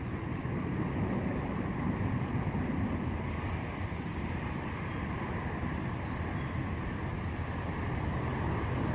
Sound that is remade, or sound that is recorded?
recorded